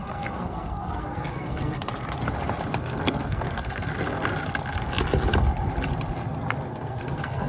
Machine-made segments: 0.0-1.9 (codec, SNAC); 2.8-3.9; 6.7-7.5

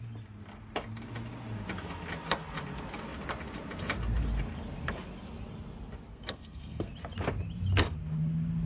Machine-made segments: 6.1-6.9 (codec, SNAC)

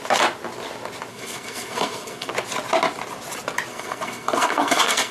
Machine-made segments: 1.1-2.3 (codec, SNAC); 3.7-5.1

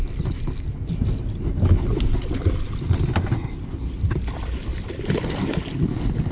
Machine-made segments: none